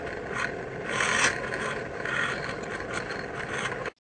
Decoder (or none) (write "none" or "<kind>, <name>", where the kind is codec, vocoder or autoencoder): none